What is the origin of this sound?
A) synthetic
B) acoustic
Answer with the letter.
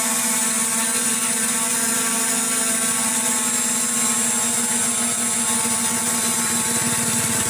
B